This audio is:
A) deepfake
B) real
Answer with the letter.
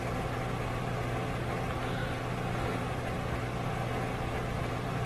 B